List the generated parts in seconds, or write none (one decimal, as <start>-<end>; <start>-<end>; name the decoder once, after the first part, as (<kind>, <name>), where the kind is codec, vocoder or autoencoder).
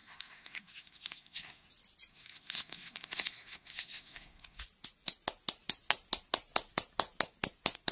0.0-1.7 (codec, SNAC); 2.1-4.6